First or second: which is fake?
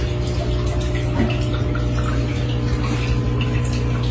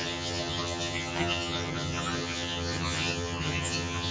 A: second